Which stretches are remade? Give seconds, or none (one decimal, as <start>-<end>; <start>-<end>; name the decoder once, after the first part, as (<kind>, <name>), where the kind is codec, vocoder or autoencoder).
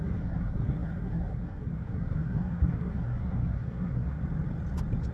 0.0-4.2 (codec, SNAC)